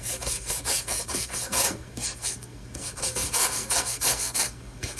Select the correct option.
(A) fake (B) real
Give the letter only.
A